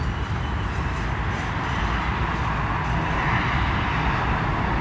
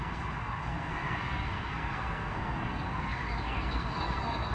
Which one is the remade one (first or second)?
second